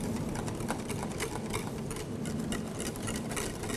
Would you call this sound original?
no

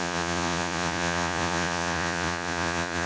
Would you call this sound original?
no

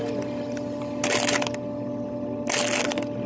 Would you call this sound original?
yes